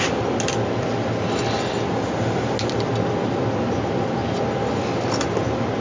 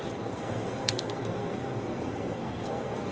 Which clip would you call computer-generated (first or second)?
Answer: second